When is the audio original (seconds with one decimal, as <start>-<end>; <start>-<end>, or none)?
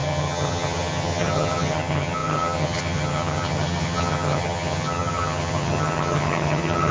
none